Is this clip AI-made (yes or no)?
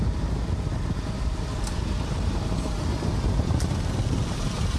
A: yes